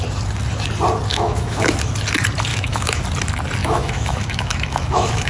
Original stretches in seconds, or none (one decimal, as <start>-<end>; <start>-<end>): 0.0-1.1; 1.9-2.5; 3.0-3.6